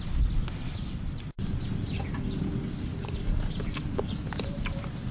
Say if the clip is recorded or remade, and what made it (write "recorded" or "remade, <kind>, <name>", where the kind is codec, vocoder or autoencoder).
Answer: recorded